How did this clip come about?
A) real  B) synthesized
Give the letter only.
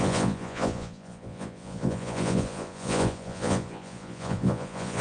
B